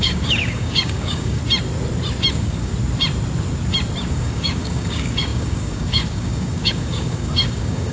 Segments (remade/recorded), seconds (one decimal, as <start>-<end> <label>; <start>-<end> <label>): 0.0-1.4 remade; 1.4-2.3 recorded; 2.3-2.7 remade; 2.7-4.1 recorded; 4.1-7.9 remade